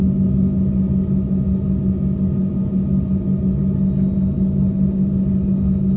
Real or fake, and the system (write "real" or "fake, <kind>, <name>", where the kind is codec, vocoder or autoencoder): real